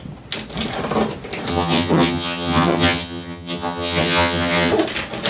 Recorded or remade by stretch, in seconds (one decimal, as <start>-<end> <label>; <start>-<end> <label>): 0.0-1.5 recorded; 1.5-4.7 remade; 4.7-5.3 recorded